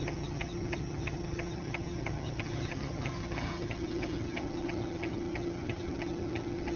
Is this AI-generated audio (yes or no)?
yes